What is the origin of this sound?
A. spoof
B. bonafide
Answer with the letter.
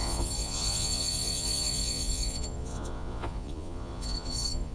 A